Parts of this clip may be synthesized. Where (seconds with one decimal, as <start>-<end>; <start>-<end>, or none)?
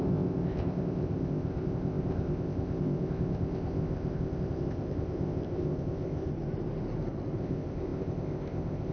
0.0-6.3; 7.4-8.9